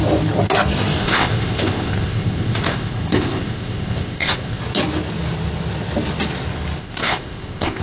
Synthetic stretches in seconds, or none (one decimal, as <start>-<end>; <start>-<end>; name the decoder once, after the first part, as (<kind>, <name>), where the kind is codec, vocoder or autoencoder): 1.0-4.6 (codec, ZipCodec); 6.8-7.8